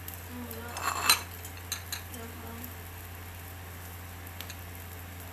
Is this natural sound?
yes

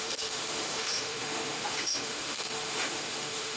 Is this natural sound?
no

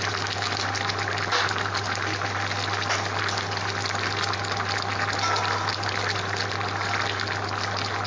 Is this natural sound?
yes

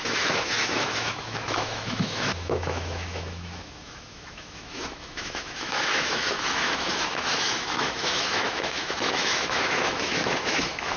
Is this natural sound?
no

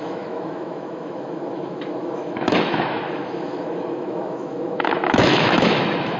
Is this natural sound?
no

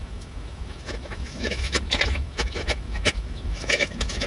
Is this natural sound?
no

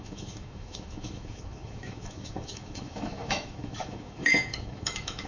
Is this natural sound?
no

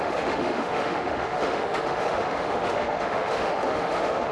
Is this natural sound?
no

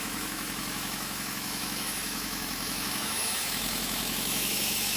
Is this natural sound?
no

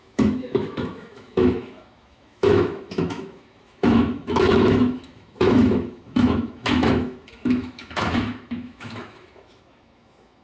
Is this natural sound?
no